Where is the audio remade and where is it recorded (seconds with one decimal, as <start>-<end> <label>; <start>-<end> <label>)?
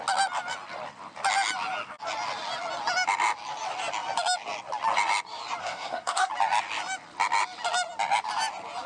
0.0-5.6 recorded; 5.6-6.3 remade; 6.3-8.9 recorded